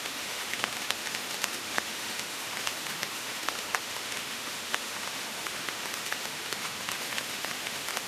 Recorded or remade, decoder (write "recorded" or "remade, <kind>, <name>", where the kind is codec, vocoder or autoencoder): remade, autoencoder, DAC-VAE